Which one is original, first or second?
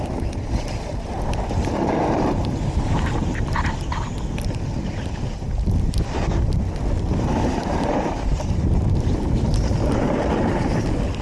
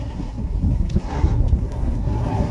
first